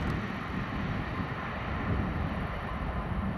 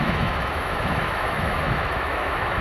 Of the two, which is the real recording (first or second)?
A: first